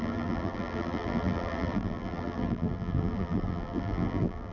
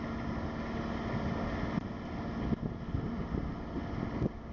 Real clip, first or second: second